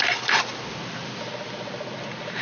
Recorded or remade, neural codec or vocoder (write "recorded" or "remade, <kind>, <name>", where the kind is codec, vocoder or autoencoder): recorded